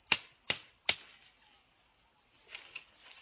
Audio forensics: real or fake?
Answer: real